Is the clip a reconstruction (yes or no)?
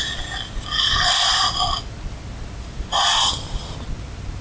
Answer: no